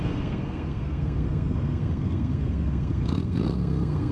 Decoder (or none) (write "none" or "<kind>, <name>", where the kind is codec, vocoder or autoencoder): codec, SNAC